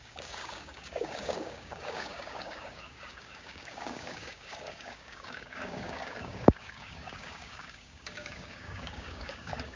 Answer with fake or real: fake